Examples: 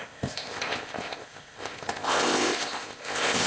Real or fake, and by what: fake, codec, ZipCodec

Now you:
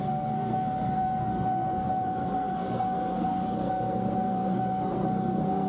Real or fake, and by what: fake, codec, SNAC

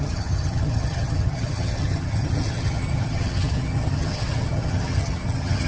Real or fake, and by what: fake, vocoder, HiFi-GAN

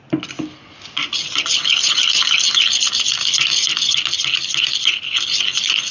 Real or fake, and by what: real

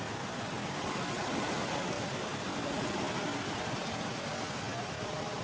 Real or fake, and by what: real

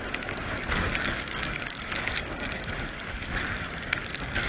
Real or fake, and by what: fake, codec, DAC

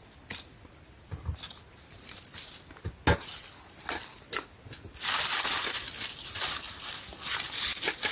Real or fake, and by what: real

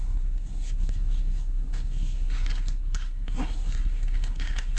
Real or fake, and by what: fake, codec, SNAC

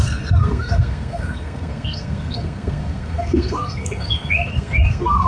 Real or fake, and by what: fake, codec, SNAC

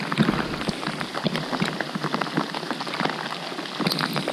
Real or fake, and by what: real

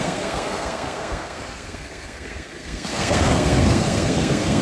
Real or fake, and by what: fake, codec, SNAC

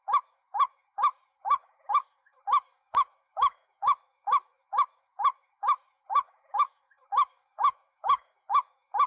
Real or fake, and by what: fake, autoencoder, DAC-VAE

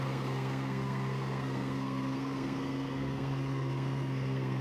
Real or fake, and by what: fake, codec, SNAC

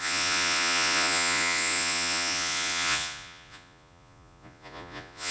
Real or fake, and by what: fake, vocoder, Vocos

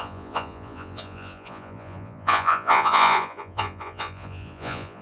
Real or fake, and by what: fake, vocoder, Vocos